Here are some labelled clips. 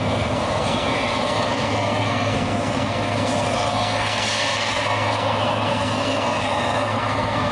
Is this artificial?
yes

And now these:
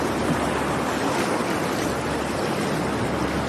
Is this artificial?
no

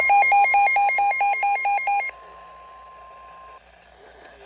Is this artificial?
no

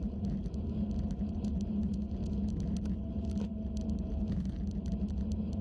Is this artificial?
no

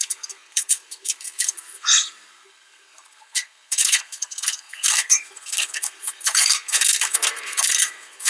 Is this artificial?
yes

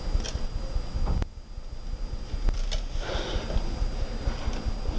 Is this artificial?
no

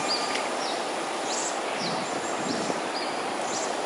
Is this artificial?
no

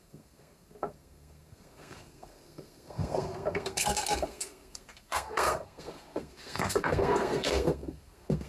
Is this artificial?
yes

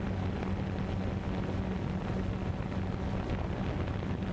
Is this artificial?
no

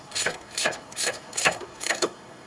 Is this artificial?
yes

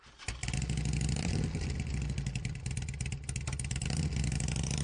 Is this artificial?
no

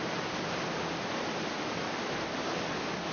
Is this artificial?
no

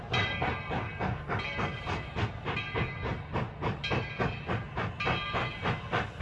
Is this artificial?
no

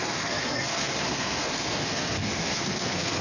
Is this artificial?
yes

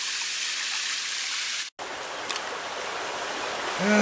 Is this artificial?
no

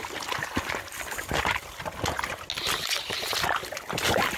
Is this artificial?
no